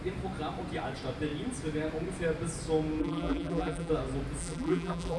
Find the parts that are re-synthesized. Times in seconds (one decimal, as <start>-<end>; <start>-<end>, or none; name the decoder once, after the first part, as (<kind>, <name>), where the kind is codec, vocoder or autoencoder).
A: 3.0-3.9 (vocoder, BigVGAN v2); 4.4-5.2